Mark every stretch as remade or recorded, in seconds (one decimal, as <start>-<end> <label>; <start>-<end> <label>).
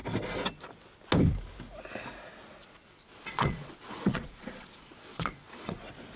0.0-2.6 recorded; 2.6-5.8 remade; 5.8-6.2 recorded